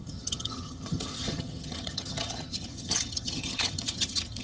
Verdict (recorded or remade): remade